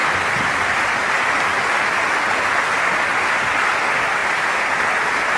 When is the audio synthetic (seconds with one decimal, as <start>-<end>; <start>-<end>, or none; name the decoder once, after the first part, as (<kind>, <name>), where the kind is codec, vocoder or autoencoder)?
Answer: 4.2-5.4 (vocoder, BigVGAN v2)